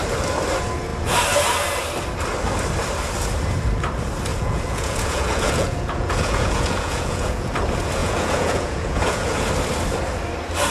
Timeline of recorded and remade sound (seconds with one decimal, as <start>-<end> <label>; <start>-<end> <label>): 0.0-4.3 recorded; 4.3-7.5 remade; 7.5-8.0 recorded; 8.0-9.5 remade; 9.5-10.7 recorded